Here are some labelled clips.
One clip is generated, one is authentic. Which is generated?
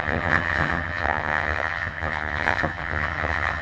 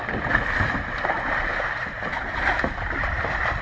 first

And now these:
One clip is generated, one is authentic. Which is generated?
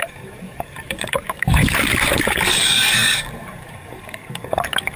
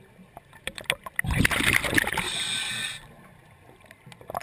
first